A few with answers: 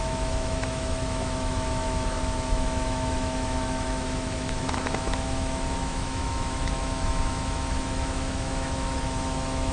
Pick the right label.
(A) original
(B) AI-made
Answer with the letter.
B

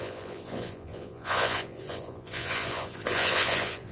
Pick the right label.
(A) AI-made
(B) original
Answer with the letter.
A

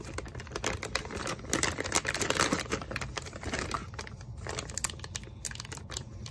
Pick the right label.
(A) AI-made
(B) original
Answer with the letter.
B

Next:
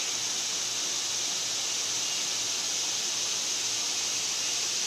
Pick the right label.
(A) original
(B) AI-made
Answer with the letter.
A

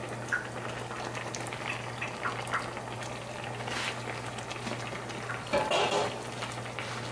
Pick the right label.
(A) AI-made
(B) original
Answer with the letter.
B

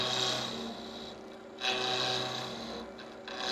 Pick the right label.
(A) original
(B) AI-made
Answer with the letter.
A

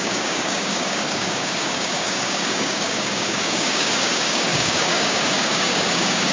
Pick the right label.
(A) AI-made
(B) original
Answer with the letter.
A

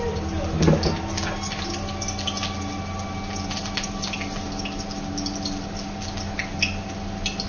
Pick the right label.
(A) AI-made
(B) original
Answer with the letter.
B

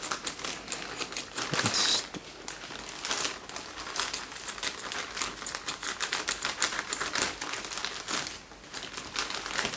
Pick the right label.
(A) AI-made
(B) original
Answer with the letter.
B